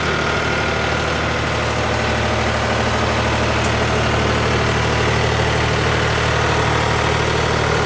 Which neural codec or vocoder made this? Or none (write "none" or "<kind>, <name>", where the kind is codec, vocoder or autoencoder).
none